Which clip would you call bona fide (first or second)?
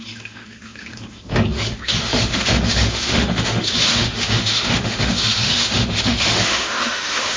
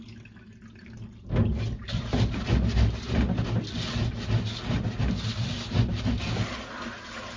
second